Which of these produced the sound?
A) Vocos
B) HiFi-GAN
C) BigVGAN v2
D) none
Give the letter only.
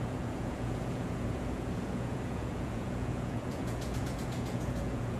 A